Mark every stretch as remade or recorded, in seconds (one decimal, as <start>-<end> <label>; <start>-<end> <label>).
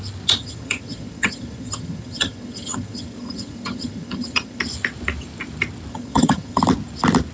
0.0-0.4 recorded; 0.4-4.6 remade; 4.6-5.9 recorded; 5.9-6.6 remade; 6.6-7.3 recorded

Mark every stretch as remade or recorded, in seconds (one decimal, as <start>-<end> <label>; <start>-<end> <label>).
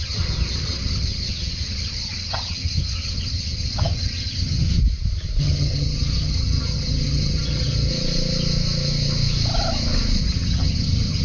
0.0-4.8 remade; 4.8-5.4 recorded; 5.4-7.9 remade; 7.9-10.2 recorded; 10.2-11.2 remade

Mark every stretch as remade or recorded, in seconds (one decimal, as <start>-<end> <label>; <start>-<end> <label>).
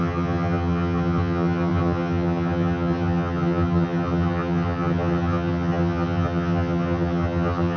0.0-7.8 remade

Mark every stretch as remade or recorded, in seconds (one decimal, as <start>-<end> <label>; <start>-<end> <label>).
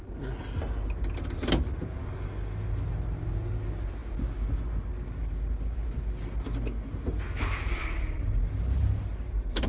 0.0-9.7 recorded